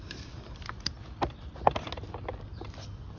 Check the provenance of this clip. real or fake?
real